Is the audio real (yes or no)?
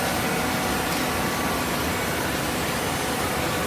yes